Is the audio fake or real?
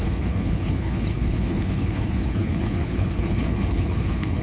fake